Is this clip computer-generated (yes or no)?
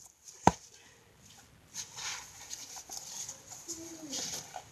no